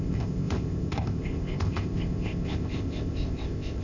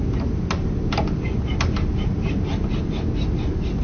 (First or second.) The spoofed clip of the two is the first